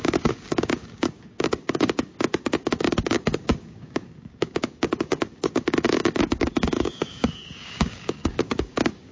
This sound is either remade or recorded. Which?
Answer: remade